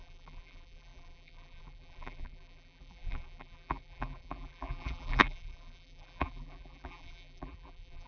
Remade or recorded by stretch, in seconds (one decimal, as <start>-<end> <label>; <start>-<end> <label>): 0.0-8.1 remade